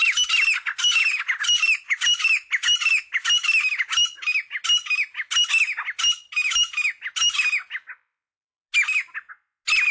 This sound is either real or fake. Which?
real